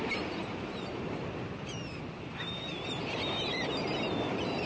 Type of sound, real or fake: real